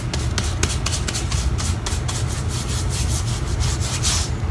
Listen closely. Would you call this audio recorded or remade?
recorded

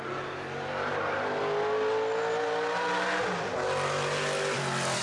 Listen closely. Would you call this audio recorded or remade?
recorded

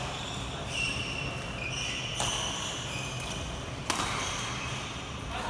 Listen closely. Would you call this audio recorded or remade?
recorded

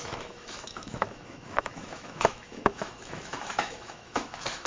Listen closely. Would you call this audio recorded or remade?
remade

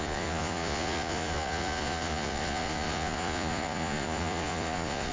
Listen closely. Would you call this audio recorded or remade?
remade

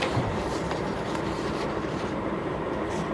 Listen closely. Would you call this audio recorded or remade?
remade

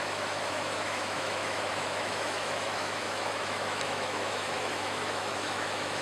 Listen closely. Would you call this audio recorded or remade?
remade